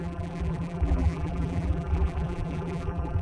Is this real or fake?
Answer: fake